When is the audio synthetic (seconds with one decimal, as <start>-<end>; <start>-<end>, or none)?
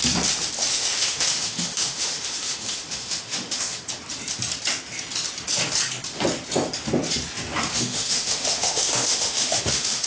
0.7-3.8; 7.7-10.1